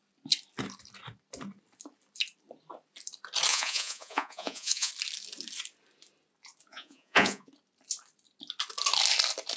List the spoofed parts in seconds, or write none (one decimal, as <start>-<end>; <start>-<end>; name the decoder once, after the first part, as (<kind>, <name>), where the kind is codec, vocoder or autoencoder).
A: 3.5-4.9 (vocoder, Vocos); 6.7-7.5